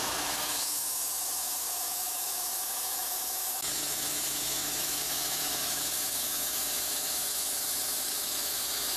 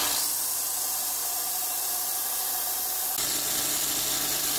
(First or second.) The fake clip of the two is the first